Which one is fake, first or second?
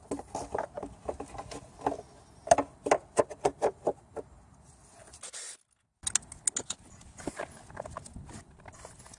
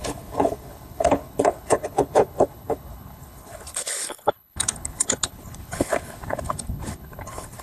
second